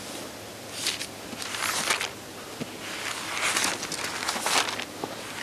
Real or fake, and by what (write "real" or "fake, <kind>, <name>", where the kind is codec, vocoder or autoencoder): real